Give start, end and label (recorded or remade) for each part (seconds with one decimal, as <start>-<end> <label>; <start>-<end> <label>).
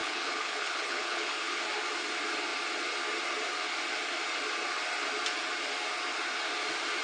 0.0-1.6 remade; 1.6-7.0 recorded